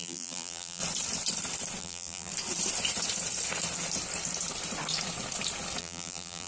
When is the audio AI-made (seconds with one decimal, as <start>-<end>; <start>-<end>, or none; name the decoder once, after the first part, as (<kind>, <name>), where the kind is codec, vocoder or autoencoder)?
0.0-0.8 (vocoder, BigVGAN v2); 1.8-2.3; 5.8-6.5